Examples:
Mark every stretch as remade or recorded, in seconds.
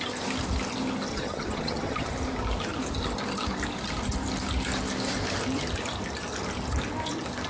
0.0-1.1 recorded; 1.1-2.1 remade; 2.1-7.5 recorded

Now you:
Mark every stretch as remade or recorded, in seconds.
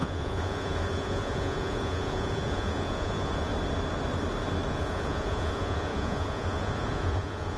0.0-3.5 remade; 3.5-4.7 recorded; 4.7-7.6 remade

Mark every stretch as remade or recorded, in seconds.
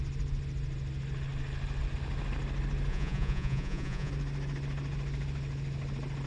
0.0-2.9 recorded; 2.9-4.1 remade; 4.1-6.3 recorded